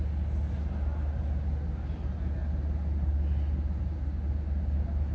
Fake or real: real